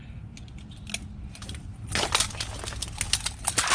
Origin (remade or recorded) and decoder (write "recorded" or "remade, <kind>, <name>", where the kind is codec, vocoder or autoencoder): recorded